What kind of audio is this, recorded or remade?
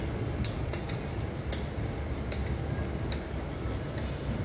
recorded